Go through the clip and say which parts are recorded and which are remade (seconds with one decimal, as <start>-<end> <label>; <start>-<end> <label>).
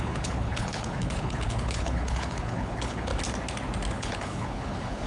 0.0-3.1 remade; 3.1-3.9 recorded; 3.9-5.1 remade